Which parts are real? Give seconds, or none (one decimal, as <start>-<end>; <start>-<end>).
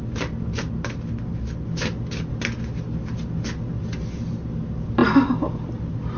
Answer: 0.0-6.2